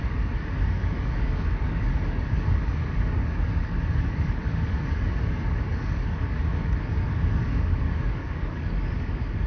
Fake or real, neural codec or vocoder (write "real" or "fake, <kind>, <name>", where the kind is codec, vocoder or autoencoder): fake, codec, DAC